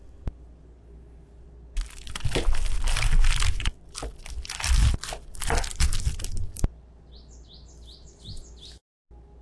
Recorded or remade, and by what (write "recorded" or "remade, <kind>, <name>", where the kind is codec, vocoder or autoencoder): recorded